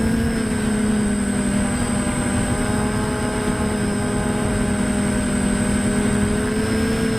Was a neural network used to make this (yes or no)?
no